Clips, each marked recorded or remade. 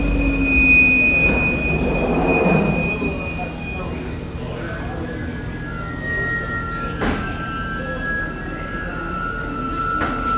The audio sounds recorded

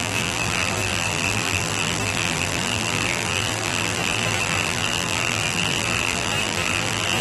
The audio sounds remade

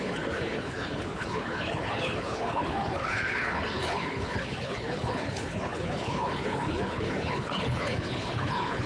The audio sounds remade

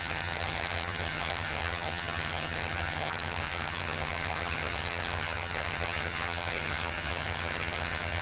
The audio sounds remade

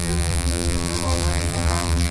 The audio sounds remade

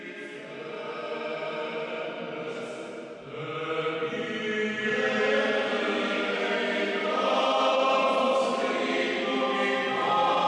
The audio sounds recorded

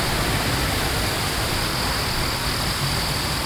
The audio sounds recorded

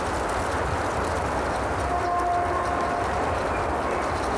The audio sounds recorded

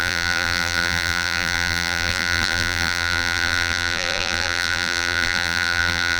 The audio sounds remade